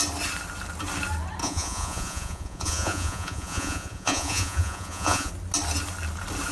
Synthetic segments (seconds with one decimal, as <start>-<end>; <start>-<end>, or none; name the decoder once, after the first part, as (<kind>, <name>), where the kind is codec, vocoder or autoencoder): 1.4-5.3 (vocoder, Vocos)